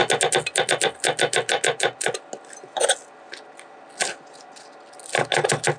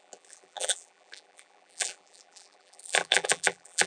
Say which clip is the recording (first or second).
first